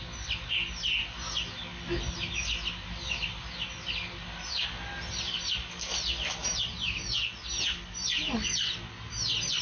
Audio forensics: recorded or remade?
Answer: recorded